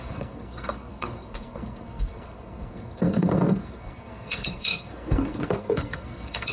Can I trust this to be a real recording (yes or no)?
no